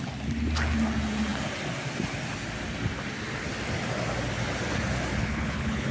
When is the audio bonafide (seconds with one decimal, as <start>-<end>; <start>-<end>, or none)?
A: 0.0-5.1